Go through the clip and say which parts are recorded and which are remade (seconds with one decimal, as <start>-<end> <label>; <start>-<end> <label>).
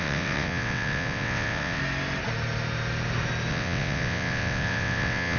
0.0-1.8 remade; 1.8-3.5 recorded; 3.5-5.4 remade